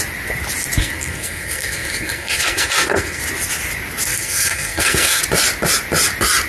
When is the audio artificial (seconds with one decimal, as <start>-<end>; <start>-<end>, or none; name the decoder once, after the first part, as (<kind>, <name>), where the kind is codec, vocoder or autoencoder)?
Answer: 0.8-3.2 (codec, SNAC); 4.1-5.2